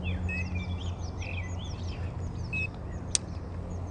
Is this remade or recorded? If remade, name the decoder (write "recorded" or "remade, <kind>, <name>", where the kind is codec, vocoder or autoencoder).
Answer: recorded